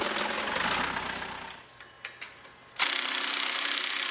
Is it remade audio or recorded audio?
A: recorded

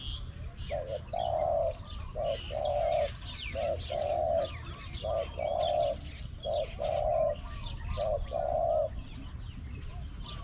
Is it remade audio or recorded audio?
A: recorded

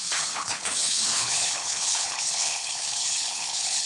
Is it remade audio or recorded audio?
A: remade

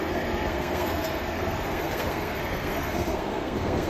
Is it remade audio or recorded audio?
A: remade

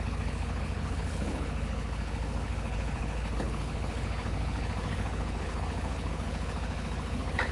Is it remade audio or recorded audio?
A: remade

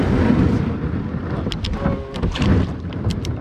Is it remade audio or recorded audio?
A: recorded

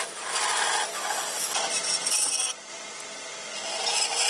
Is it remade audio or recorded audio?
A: recorded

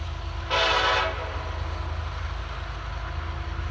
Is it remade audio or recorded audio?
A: recorded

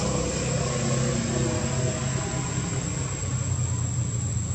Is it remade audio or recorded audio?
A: recorded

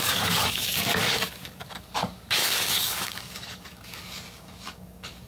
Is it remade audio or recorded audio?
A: remade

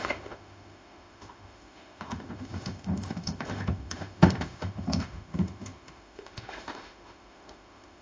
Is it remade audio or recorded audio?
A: remade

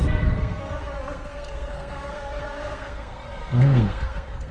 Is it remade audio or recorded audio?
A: remade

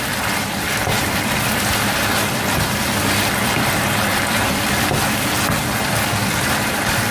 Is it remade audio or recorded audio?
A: recorded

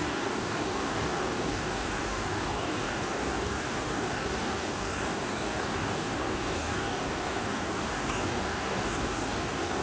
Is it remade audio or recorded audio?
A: remade